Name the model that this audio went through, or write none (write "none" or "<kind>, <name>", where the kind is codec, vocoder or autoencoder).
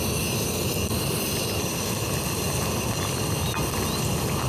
none